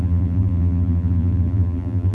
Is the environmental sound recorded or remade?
remade